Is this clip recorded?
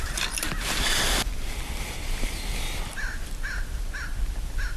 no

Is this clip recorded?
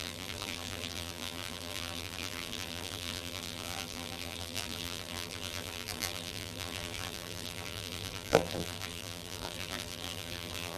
no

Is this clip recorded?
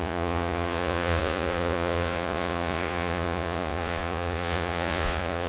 no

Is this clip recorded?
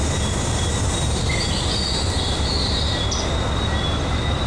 yes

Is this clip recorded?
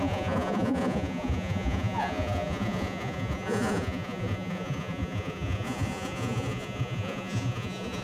no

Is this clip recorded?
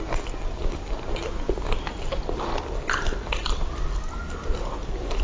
yes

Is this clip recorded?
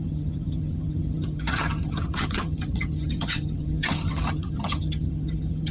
no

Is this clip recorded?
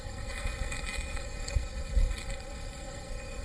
no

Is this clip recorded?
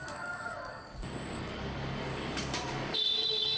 no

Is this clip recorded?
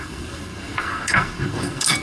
no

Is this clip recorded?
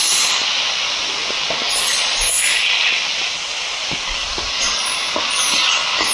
yes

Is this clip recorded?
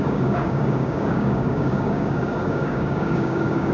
no